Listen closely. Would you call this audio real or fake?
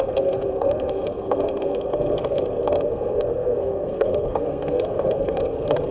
fake